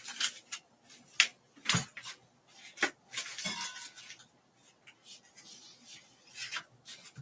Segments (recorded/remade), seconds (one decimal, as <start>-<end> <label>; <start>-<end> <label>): 0.0-7.2 recorded